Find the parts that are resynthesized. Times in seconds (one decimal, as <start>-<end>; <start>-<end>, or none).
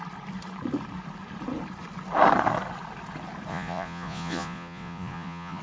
3.5-5.6